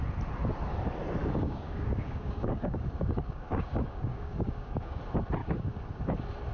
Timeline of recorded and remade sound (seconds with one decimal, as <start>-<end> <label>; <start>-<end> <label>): 0.0-1.2 recorded; 1.2-5.0 remade; 5.0-5.4 recorded; 5.4-6.0 remade; 6.0-6.5 recorded